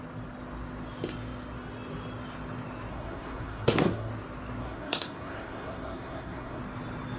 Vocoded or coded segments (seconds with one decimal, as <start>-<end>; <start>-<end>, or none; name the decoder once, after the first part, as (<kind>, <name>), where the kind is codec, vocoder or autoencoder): 2.9-4.1 (codec, SNAC); 4.6-6.6